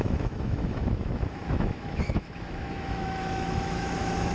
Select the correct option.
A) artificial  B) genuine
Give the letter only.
A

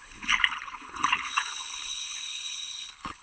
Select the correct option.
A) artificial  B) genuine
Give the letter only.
A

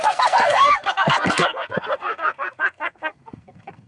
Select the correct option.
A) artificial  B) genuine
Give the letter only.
A